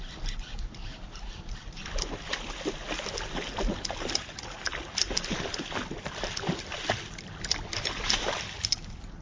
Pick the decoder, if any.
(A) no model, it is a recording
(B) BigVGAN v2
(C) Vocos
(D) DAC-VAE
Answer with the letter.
A